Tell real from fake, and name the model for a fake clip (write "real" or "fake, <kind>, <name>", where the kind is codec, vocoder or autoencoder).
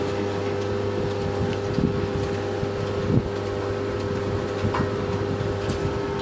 real